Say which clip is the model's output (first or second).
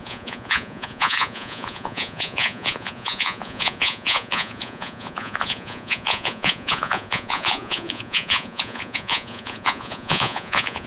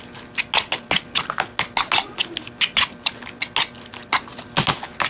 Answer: first